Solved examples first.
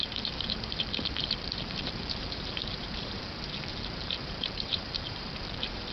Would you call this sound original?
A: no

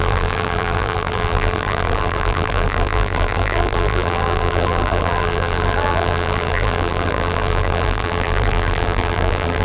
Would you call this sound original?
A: no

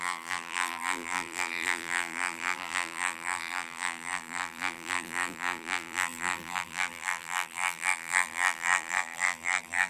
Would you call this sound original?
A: no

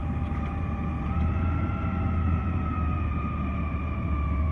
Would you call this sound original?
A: no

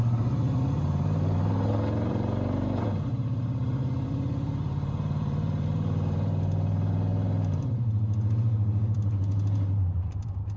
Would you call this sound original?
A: no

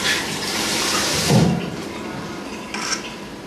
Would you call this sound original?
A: no